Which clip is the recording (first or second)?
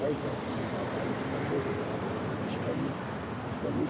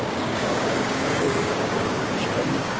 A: first